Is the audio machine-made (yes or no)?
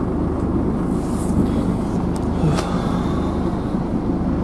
no